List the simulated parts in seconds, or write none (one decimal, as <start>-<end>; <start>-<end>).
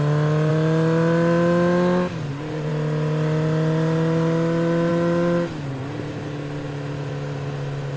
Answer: none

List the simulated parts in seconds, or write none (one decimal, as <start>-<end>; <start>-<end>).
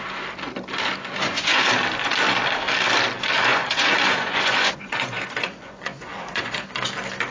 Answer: 1.2-1.7; 3.5-6.7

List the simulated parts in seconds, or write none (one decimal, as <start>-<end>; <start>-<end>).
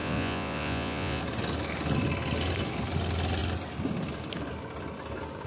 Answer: 0.0-1.2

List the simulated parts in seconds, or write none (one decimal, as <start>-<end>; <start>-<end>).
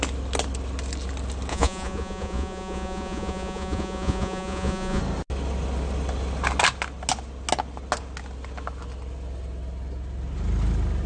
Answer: 1.5-5.0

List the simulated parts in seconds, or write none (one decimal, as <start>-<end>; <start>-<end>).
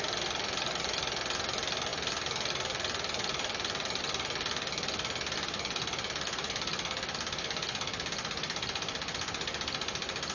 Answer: none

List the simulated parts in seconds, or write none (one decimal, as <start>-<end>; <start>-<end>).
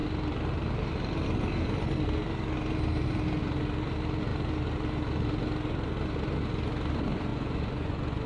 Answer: 7.3-8.3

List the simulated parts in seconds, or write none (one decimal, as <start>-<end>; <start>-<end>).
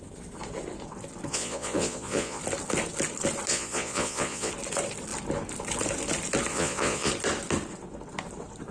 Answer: 1.3-2.4; 3.5-4.5; 6.5-7.1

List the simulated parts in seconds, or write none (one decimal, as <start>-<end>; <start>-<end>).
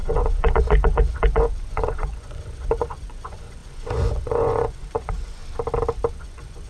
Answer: 0.0-5.4; 6.1-6.7